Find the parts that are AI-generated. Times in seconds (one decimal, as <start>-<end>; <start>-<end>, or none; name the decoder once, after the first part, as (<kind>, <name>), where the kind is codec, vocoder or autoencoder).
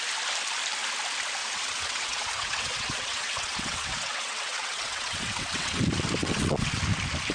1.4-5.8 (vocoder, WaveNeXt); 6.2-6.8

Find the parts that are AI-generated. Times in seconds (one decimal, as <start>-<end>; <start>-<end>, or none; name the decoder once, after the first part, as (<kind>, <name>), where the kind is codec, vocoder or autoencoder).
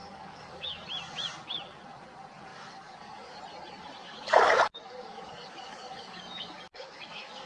0.0-0.8 (codec, DAC); 2.5-3.4; 4.0-7.5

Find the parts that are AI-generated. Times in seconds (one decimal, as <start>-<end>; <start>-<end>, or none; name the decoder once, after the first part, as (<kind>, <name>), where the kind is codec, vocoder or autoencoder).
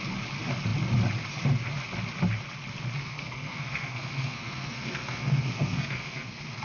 3.0-6.6 (codec, SNAC)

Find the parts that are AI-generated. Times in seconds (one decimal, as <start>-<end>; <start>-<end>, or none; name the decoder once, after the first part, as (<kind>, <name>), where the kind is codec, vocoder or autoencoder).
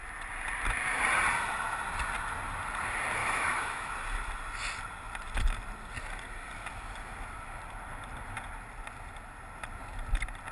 3.2-3.9 (autoencoder, DAC-VAE)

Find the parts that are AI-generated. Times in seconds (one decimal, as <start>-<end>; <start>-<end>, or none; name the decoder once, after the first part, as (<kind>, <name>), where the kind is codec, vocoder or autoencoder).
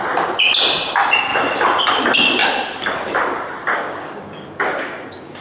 3.7-5.4 (codec, DAC)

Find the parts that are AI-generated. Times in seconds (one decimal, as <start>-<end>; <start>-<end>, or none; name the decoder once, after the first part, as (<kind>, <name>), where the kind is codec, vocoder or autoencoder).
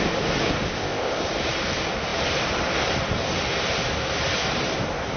0.7-1.2 (codec, ZipCodec)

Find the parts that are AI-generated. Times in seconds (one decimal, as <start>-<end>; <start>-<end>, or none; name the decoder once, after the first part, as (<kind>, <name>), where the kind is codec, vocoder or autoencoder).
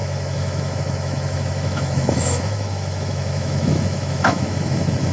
0.0-5.1 (autoencoder, DAC-VAE)